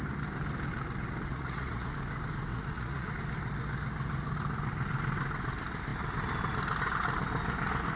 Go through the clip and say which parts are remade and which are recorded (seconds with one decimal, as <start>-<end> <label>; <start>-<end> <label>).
0.0-1.3 recorded; 1.3-1.9 remade; 1.9-2.5 recorded; 2.5-3.1 remade; 3.1-8.0 recorded